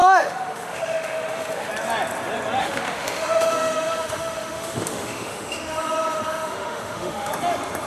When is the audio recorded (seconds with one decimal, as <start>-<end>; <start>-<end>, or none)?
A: 1.7-2.6; 7.3-7.9